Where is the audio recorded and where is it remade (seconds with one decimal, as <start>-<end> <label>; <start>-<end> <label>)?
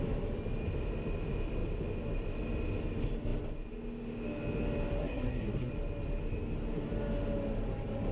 0.0-5.0 recorded; 5.0-5.7 remade; 5.7-8.1 recorded